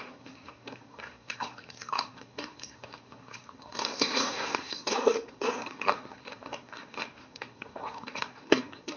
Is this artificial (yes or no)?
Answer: yes